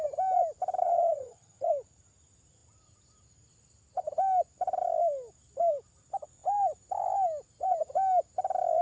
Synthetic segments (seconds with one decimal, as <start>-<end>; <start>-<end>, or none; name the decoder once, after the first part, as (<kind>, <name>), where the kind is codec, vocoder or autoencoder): 0.8-1.7 (vocoder, HiFi-GAN)